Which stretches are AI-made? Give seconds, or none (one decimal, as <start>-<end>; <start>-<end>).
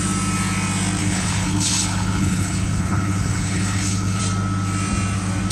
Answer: 1.0-4.2